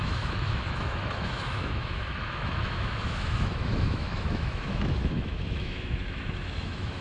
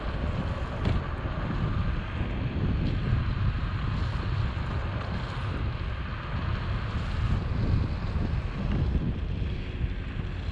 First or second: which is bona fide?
second